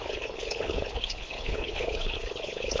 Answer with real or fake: fake